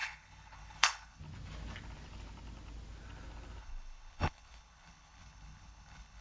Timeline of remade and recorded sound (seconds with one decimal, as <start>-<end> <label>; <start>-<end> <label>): 0.0-1.2 remade; 1.2-3.6 recorded; 3.6-6.2 remade